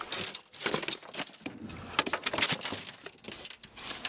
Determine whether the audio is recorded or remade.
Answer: recorded